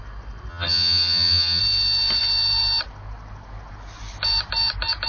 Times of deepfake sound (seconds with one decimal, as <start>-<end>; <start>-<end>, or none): 0.5-1.6